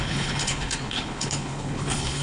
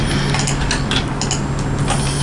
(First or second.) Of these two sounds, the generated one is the first